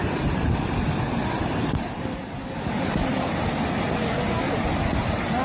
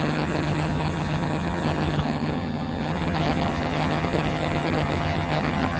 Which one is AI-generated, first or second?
second